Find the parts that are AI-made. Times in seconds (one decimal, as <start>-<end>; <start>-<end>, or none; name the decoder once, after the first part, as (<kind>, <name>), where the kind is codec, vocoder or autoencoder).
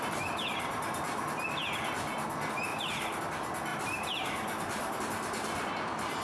2.7-3.2 (vocoder, BigVGAN v2); 3.7-5.0